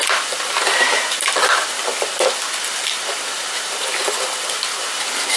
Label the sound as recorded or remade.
remade